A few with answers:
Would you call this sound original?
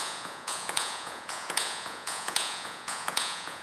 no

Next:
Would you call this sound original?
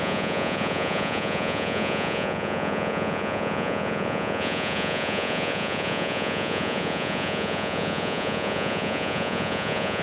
no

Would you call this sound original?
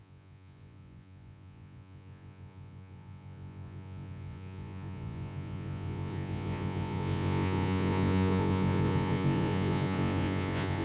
no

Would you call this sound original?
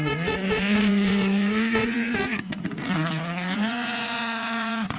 no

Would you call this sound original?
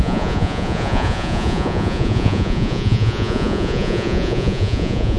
no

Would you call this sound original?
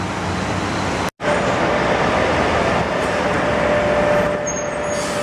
yes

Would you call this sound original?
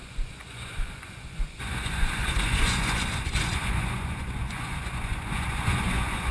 no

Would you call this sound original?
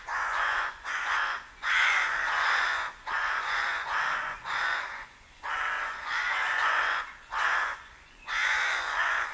no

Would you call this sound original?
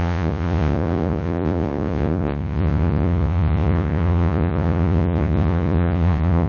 no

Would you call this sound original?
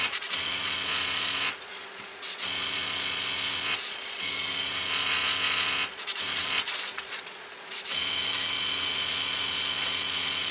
no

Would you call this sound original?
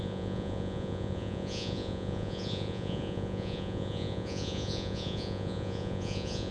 no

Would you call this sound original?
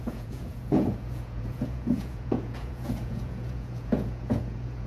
no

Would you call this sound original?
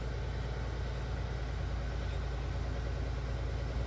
yes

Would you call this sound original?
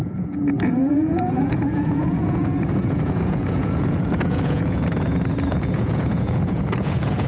no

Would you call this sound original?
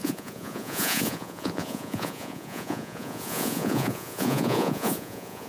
no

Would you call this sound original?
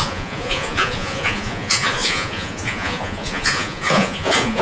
no